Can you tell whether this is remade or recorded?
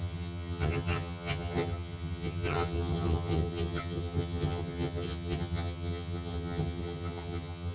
remade